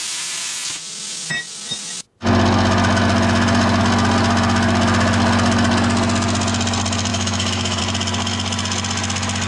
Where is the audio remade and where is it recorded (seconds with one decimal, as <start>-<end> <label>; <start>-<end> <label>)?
0.0-7.1 recorded; 7.1-7.8 remade; 7.8-9.5 recorded